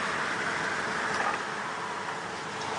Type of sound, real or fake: real